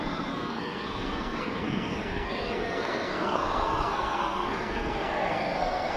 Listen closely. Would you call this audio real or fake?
fake